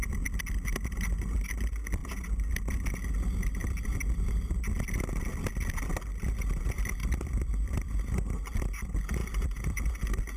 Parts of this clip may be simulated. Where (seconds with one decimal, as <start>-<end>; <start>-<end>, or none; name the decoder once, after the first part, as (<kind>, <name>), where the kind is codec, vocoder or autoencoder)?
2.0-2.7 (vocoder, BigVGAN v2); 3.6-4.6; 7.0-8.0; 9.2-9.9